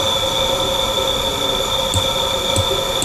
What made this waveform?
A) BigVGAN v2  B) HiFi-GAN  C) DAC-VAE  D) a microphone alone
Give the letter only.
D